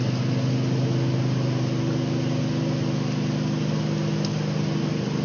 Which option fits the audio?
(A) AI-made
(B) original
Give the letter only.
B